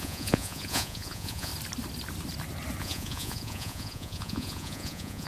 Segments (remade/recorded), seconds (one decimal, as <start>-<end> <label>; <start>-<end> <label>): 0.0-1.5 remade; 1.5-2.8 recorded; 2.8-5.3 remade